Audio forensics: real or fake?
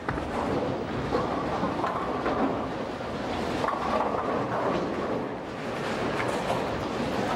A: real